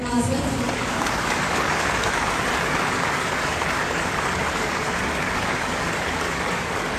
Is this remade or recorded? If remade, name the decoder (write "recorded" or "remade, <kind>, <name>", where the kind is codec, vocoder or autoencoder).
remade, codec, DAC